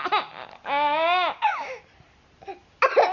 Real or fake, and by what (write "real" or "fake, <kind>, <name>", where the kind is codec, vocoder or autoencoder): real